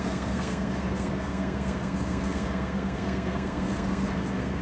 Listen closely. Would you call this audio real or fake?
fake